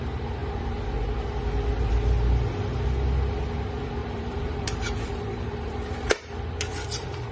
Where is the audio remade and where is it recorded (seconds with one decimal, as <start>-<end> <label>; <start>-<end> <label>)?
0.0-4.0 recorded; 4.0-6.3 remade; 6.3-6.7 recorded; 6.7-7.3 remade